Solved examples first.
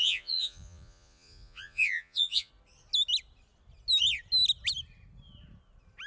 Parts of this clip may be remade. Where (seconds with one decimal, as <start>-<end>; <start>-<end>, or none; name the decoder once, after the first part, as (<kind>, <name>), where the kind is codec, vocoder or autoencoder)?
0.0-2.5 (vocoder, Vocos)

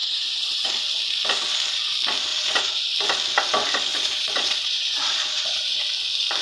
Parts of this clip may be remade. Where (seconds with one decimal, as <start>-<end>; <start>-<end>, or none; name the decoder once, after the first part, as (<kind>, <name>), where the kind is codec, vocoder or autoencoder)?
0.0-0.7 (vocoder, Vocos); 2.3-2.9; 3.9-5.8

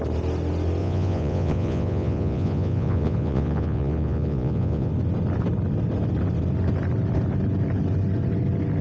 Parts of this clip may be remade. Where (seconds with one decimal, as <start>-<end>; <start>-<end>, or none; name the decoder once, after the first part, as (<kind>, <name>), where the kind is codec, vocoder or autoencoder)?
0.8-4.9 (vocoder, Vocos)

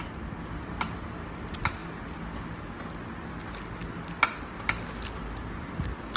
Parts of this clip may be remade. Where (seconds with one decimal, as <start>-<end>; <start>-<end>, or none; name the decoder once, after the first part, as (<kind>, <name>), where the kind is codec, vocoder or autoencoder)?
none

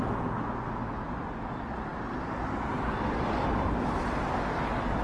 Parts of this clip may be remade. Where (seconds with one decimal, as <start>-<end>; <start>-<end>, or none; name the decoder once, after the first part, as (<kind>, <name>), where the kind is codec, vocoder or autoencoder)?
none

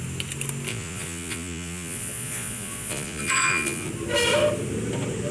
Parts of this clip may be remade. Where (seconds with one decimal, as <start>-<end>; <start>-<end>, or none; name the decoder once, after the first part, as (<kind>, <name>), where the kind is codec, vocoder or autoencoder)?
0.7-3.9 (vocoder, Vocos)